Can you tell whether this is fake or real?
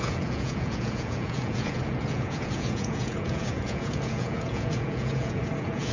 fake